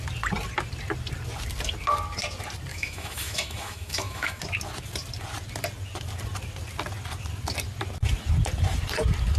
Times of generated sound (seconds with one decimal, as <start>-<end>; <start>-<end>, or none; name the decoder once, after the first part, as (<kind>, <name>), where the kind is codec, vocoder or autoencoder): 2.7-4.4 (autoencoder, DAC-VAE)